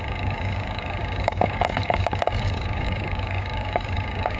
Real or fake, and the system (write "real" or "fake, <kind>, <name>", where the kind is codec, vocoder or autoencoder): fake, codec, DAC